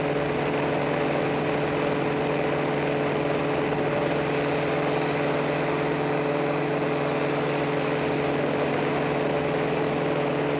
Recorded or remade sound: recorded